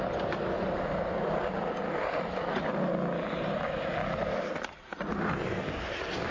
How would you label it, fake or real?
real